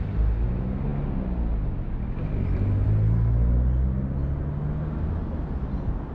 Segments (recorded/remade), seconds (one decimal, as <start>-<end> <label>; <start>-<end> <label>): 0.0-6.1 recorded